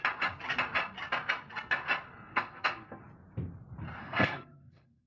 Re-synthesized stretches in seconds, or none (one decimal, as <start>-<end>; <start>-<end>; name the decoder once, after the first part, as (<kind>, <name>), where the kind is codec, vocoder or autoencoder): 2.3-3.0 (codec, SNAC); 4.0-5.1